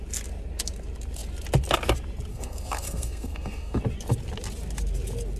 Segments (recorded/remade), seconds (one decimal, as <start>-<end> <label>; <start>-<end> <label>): 0.0-2.3 recorded; 2.3-3.8 remade; 3.8-5.4 recorded